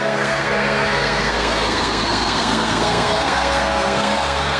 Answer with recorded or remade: remade